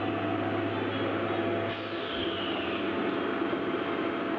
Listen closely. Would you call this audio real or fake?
real